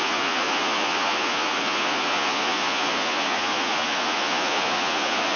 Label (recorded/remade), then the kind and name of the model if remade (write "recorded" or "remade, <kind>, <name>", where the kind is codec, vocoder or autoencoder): remade, vocoder, Vocos